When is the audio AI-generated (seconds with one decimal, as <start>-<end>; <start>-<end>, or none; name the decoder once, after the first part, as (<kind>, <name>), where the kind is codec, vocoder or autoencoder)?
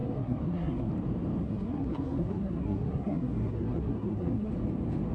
0.0-0.9 (codec, SNAC); 1.4-4.5